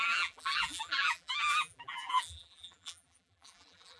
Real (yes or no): no